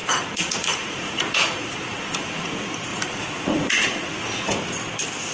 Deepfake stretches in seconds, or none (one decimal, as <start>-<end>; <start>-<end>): 0.0-2.5; 2.9-4.5